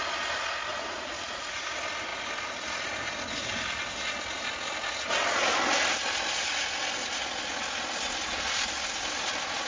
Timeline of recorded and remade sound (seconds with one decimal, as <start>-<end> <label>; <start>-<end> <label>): 0.0-0.7 recorded; 0.7-1.6 remade; 1.6-9.7 recorded